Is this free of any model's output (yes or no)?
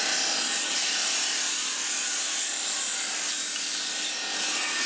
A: yes